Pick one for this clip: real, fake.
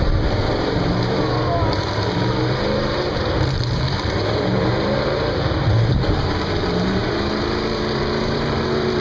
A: fake